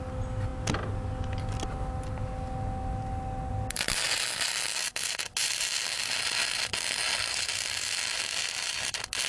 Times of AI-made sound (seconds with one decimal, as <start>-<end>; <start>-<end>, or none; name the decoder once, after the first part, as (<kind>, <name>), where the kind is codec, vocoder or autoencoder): none